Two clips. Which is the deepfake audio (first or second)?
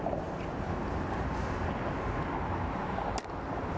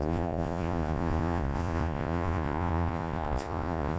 second